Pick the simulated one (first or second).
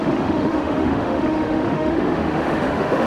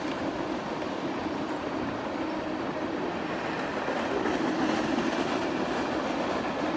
first